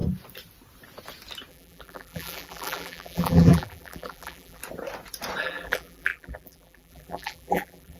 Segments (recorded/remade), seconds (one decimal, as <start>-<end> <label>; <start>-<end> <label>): 0.0-1.5 recorded; 1.5-4.6 remade; 4.6-5.4 recorded; 5.4-8.0 remade